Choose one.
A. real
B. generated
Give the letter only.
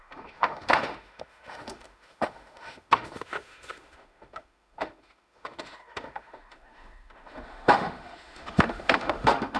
B